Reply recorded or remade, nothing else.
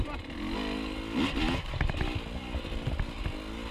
recorded